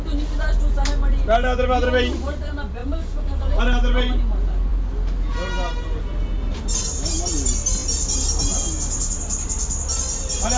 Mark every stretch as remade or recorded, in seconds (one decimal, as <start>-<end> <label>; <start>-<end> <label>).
0.0-2.8 recorded; 2.8-3.6 remade; 3.6-10.6 recorded